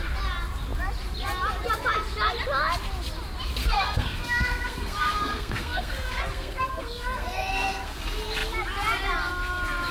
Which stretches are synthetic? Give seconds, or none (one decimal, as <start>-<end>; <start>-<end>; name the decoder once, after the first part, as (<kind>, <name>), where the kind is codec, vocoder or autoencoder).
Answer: 3.6-8.0 (codec, SNAC)